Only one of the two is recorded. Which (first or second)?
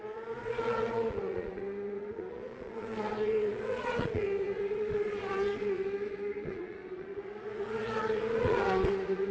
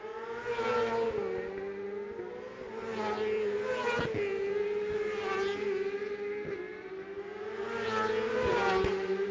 second